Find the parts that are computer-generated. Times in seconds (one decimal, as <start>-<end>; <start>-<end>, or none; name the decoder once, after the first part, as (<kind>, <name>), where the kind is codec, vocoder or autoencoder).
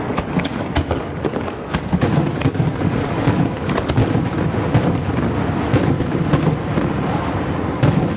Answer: 0.0-4.0 (codec, DAC)